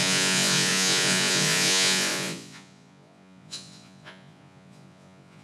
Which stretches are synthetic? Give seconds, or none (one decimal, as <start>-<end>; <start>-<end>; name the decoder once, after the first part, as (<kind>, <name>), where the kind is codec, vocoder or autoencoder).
0.0-5.4 (vocoder, Vocos)

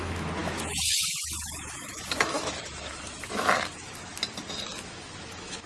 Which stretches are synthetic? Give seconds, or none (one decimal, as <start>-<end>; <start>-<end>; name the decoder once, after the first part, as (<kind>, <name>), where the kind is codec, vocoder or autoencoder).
0.0-4.2 (autoencoder, DAC-VAE); 4.7-5.7

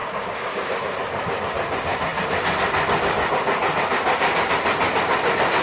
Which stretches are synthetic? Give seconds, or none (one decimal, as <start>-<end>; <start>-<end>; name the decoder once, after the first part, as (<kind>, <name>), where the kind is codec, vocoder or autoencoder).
0.0-0.7 (codec, DAC)

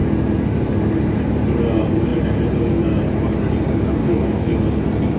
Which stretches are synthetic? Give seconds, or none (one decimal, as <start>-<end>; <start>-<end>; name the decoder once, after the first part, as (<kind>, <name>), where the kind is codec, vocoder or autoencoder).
4.0-4.5 (codec, DAC)

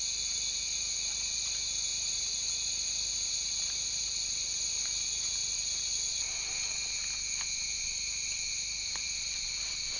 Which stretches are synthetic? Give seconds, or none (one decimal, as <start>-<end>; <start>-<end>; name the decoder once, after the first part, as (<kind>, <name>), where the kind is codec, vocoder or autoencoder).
1.9-4.8 (vocoder, BigVGAN v2); 5.4-6.4; 7.8-10.0

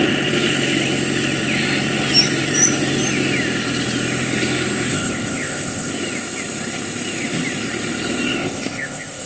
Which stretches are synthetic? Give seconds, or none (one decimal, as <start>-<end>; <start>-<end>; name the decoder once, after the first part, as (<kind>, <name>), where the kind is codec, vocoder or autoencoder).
4.9-5.9 (codec, ZipCodec); 8.3-9.3

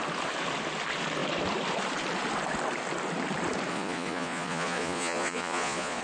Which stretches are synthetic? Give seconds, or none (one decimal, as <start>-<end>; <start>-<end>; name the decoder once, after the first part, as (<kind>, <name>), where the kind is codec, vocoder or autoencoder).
3.7-6.0 (vocoder, Vocos)

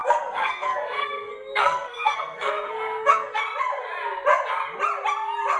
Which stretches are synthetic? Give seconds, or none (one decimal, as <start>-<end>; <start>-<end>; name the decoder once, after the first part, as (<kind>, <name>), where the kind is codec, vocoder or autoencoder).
0.0-3.4 (codec, SNAC)